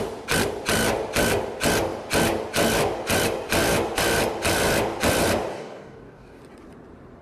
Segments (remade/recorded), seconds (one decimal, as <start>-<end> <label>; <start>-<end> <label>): 0.0-5.5 recorded; 5.5-6.4 remade; 6.4-7.2 recorded